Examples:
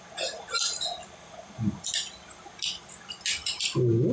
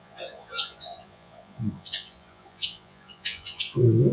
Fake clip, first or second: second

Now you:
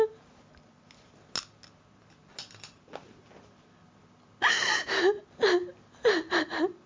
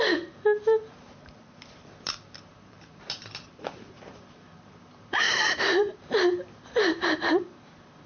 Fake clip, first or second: second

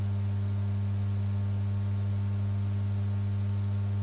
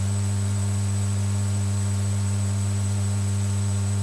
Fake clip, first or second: second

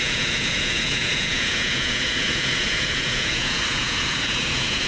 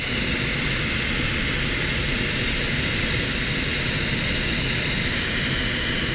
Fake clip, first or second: first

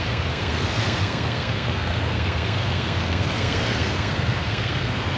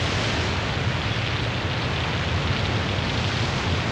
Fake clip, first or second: first